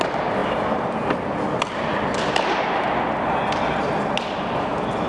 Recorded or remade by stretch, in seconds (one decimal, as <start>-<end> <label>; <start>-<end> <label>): 0.0-5.1 recorded